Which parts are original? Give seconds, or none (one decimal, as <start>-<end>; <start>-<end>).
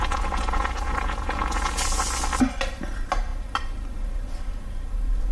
2.0-5.3